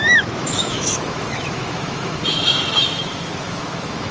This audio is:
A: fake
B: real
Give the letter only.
A